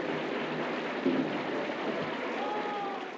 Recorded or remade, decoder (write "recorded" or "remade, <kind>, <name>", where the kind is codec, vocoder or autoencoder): recorded